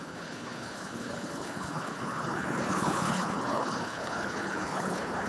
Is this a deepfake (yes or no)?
yes